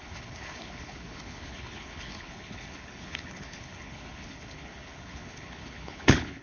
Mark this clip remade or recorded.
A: remade